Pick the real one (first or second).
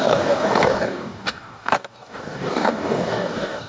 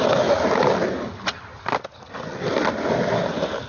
second